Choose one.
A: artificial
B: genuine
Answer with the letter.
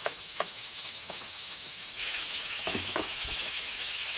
A